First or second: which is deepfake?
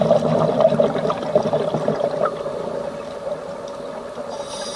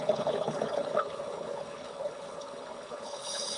second